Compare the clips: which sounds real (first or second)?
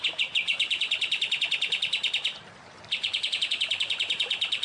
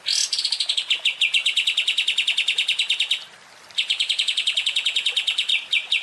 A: second